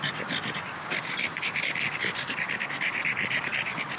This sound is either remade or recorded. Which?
recorded